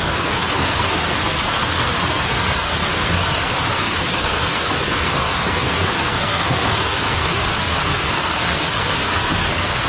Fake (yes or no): yes